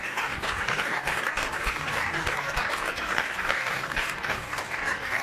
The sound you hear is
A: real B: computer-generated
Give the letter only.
B